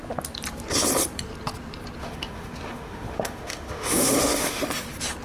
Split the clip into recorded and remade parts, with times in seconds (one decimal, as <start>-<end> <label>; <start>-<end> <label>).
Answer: 0.0-2.0 recorded; 2.0-4.6 remade; 4.6-5.2 recorded